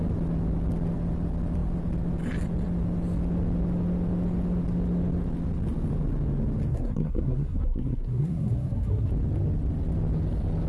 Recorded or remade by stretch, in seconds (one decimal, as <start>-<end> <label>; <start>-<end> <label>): 0.0-6.7 recorded; 6.7-9.1 remade; 9.1-10.7 recorded